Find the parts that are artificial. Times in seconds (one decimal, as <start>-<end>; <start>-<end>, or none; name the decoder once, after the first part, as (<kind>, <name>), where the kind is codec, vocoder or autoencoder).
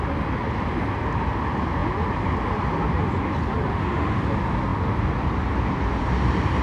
3.7-4.2 (autoencoder, DAC-VAE)